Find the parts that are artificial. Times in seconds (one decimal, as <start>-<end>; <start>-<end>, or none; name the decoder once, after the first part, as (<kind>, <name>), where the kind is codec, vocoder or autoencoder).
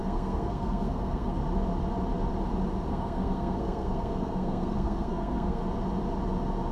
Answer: 0.0-1.4 (codec, SNAC); 2.9-5.6